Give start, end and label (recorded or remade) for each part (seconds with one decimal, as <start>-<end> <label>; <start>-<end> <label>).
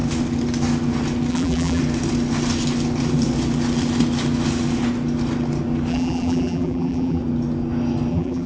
0.0-1.3 recorded; 1.3-1.8 remade; 1.8-5.9 recorded; 5.9-7.2 remade; 7.2-8.1 recorded; 8.1-8.5 remade